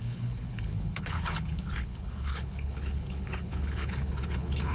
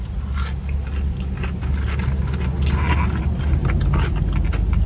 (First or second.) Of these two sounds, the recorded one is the second